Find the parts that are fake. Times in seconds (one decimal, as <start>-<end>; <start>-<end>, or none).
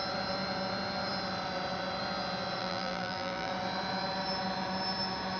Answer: 2.6-3.5